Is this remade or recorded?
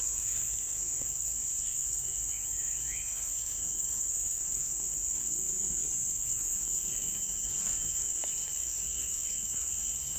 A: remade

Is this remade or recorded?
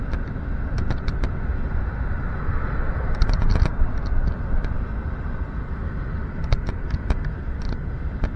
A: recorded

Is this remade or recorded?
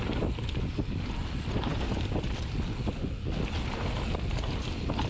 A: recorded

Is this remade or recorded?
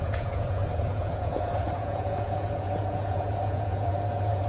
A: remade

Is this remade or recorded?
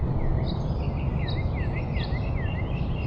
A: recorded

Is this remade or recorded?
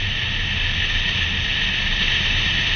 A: recorded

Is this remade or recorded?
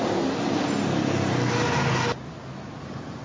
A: recorded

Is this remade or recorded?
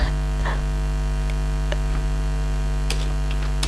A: recorded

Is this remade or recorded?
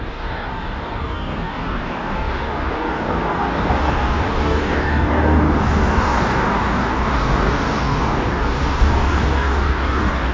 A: remade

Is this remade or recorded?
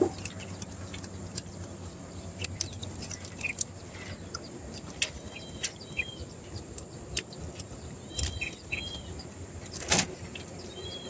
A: remade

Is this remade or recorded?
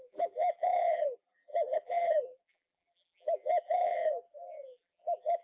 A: remade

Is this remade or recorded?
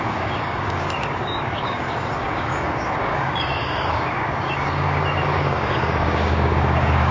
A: remade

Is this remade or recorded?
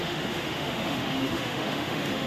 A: remade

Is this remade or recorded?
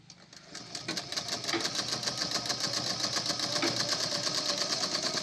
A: recorded